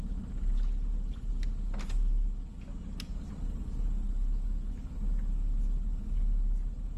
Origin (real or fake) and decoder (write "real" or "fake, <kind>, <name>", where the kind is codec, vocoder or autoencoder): real